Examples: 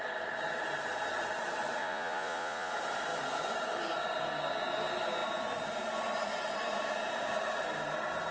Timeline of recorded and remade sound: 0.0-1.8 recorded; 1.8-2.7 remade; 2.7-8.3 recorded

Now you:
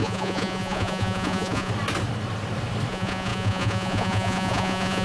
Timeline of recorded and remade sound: 0.0-1.7 remade; 1.7-2.9 recorded; 2.9-5.0 remade